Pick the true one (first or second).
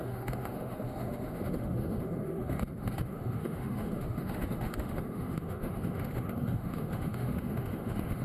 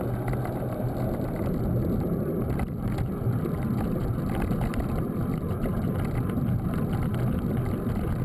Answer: second